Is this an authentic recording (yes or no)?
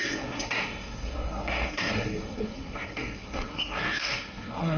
no